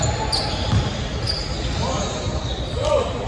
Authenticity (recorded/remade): recorded